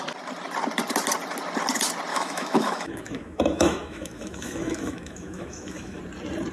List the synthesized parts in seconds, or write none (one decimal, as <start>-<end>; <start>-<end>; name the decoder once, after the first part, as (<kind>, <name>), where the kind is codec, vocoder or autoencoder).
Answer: 2.1-6.0 (autoencoder, DAC-VAE)